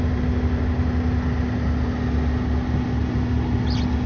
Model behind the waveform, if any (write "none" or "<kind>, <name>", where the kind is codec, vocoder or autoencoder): none